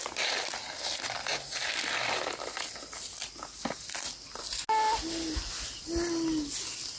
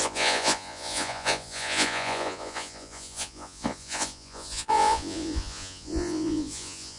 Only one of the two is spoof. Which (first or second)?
second